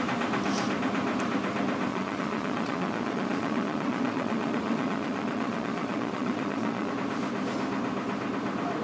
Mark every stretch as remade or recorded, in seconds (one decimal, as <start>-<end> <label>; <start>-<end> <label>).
0.0-1.9 recorded; 1.9-6.9 remade; 6.9-8.8 recorded